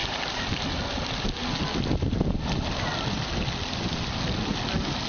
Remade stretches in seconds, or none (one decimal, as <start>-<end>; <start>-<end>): none